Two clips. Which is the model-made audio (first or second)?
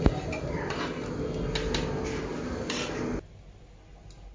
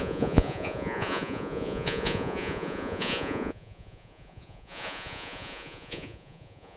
second